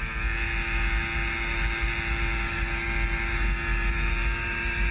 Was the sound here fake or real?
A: real